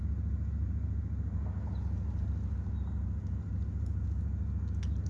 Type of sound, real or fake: real